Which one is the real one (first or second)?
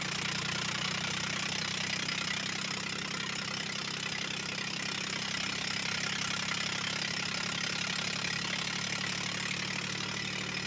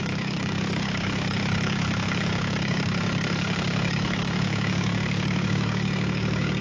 first